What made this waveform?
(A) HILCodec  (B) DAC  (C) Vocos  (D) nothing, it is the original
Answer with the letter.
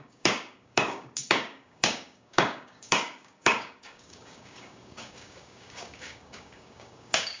B